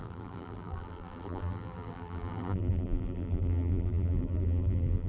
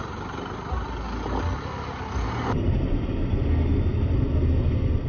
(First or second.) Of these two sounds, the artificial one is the first